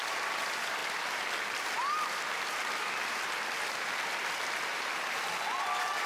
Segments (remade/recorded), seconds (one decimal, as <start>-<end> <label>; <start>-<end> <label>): 0.0-6.1 recorded

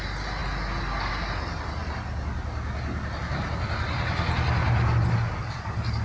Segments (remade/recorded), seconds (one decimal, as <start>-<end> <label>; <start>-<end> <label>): 0.0-6.0 recorded

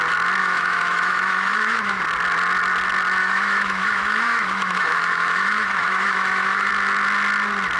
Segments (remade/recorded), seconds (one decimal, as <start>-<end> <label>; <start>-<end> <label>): 0.0-0.4 recorded; 0.4-2.0 remade; 2.0-3.2 recorded; 3.2-6.7 remade; 6.7-7.8 recorded

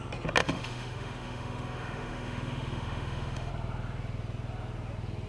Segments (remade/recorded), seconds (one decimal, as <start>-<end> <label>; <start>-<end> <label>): 0.0-0.4 recorded; 0.4-3.5 remade; 3.5-5.3 recorded

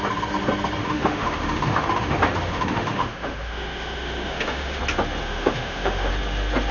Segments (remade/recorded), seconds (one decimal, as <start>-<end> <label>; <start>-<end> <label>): 0.0-0.8 recorded; 0.8-4.8 remade; 4.8-5.2 recorded; 5.2-6.1 remade; 6.1-6.7 recorded